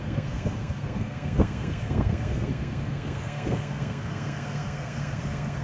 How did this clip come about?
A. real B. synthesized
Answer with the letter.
B